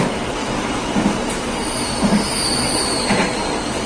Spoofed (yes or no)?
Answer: no